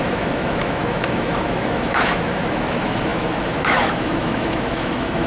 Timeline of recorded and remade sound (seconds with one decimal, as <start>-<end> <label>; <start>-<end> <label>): 0.0-5.3 remade